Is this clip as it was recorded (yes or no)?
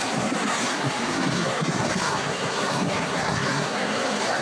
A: no